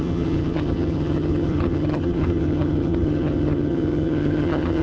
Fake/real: fake